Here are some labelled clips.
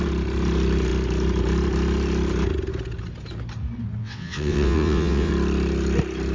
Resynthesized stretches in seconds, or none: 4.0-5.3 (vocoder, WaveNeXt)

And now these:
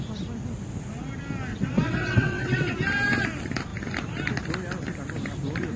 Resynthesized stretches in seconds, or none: 1.5-2.7 (vocoder, WaveNeXt)